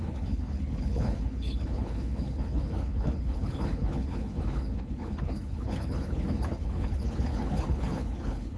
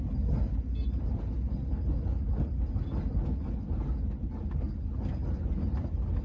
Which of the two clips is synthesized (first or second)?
first